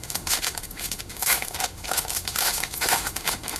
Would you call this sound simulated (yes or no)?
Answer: yes